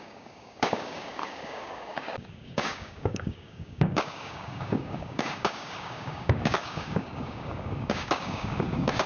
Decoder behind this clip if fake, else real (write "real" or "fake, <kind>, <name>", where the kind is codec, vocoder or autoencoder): fake, codec, DAC